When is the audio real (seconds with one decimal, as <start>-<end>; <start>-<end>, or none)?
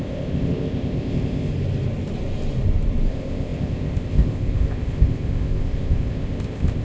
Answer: 1.5-3.1